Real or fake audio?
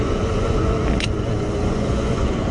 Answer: fake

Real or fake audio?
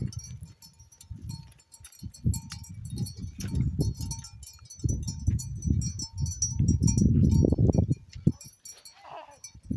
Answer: real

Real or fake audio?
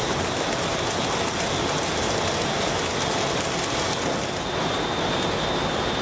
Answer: real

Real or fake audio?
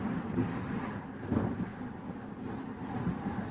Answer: real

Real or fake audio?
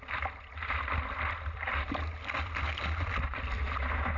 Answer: real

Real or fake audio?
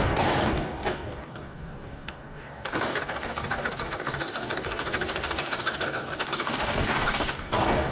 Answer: fake